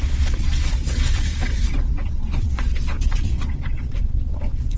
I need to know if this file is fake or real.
fake